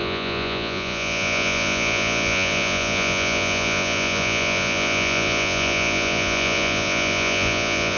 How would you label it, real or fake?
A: fake